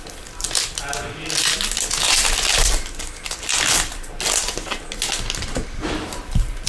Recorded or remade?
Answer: recorded